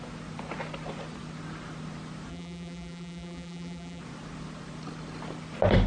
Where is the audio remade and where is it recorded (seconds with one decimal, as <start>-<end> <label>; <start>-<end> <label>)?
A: 0.0-2.3 recorded; 2.3-4.0 remade; 4.0-5.9 recorded